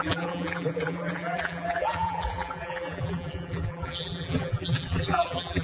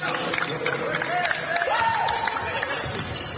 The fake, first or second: first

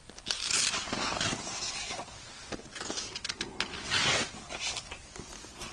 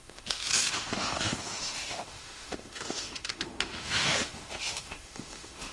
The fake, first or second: second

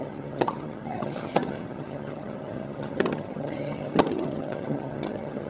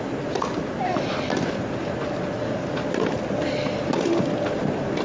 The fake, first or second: first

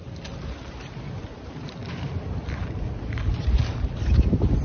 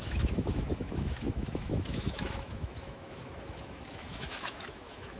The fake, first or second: second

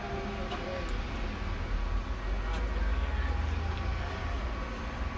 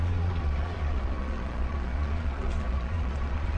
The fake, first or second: second